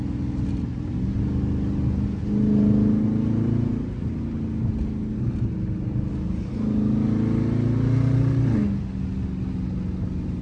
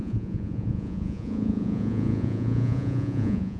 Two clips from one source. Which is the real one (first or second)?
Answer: first